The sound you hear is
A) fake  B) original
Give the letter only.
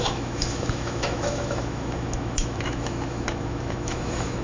A